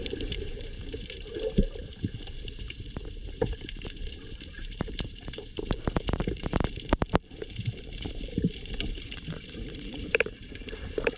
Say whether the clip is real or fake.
fake